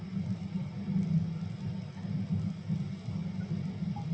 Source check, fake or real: real